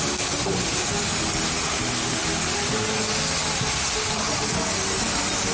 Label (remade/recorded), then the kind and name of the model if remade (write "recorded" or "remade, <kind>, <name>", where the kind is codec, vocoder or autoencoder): recorded